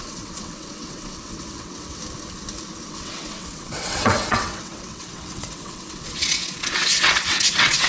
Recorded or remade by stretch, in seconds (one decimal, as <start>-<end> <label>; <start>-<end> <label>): 0.0-2.0 remade; 2.0-2.9 recorded; 2.9-7.9 remade